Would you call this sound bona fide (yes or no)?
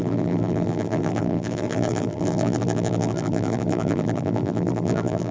no